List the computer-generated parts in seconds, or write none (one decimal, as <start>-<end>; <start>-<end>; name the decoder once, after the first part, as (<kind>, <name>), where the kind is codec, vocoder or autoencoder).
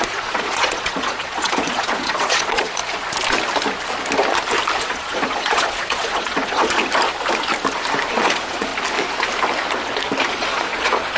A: 0.0-2.8 (vocoder, Vocos); 4.8-6.8; 8.1-8.7; 10.3-11.2